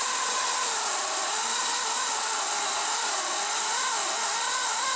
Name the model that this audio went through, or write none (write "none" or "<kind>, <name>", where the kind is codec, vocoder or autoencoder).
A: none